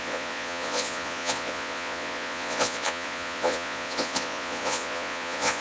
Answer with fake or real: fake